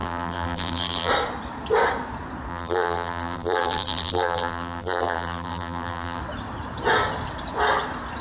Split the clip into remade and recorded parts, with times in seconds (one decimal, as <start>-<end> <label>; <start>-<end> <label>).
0.0-1.1 remade; 1.1-2.5 recorded; 2.5-6.2 remade; 6.2-8.2 recorded